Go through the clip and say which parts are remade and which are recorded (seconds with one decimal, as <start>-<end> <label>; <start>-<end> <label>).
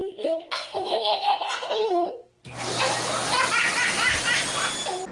0.0-2.1 remade; 2.1-5.1 recorded